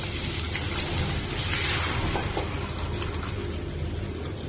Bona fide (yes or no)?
yes